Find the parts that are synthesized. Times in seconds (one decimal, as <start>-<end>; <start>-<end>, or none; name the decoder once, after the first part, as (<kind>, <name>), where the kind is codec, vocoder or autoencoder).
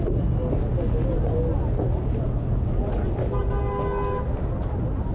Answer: none